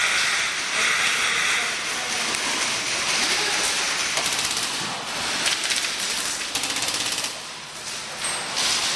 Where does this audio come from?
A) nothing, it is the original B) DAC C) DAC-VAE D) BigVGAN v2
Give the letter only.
A